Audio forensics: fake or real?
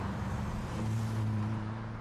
fake